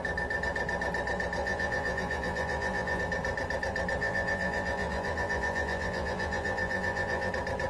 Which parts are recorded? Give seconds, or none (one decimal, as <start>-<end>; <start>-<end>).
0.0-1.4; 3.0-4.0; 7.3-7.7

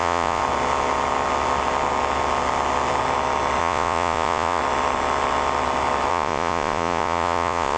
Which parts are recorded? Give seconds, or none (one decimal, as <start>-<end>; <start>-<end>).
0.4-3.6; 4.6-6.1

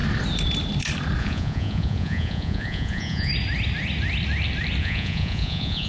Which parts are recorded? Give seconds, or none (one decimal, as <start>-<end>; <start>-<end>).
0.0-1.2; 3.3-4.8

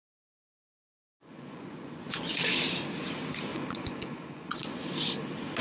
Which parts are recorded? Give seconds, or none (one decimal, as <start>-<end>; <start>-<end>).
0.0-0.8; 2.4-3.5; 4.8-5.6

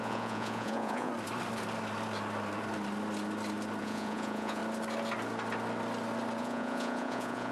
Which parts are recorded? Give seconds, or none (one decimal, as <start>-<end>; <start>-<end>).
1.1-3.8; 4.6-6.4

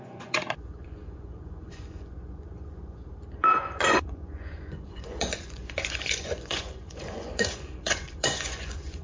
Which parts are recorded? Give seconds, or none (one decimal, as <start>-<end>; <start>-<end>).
3.0-3.6